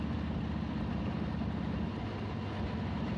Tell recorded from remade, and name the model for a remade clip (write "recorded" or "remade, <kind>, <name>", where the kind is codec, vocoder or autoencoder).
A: recorded